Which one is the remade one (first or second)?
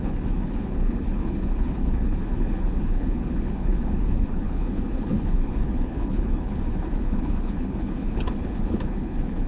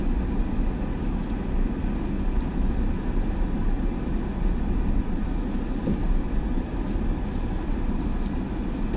first